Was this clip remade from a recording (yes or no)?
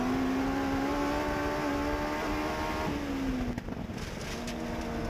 no